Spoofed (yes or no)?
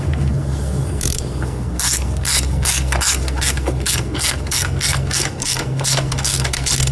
yes